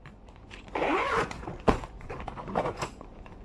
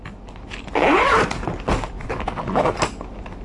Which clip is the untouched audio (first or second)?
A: second